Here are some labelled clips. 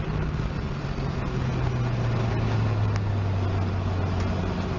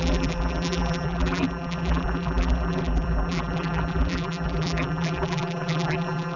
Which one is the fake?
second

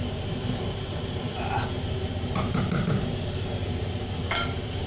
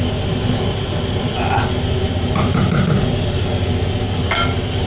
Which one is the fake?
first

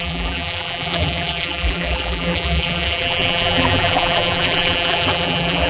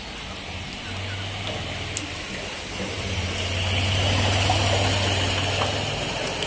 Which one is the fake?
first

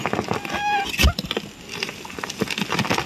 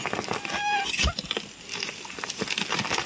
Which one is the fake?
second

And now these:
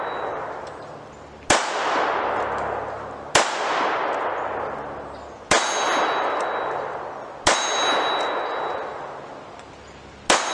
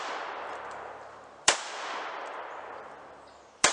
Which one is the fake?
second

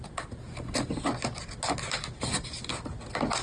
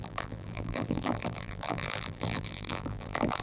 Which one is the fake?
second